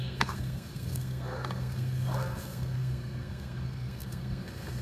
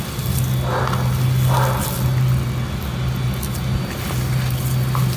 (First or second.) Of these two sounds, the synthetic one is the first